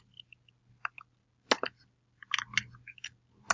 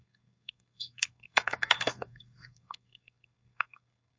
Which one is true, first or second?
first